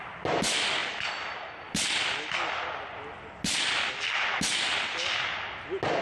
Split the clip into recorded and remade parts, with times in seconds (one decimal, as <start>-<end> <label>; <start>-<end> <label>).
0.0-6.0 recorded